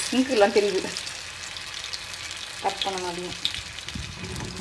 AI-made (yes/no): no